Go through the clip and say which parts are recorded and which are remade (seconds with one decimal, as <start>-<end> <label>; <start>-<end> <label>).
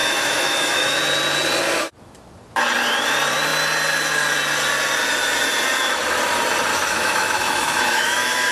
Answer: 0.0-1.0 remade; 1.0-6.7 recorded; 6.7-8.5 remade